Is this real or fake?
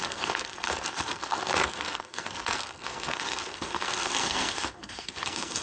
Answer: fake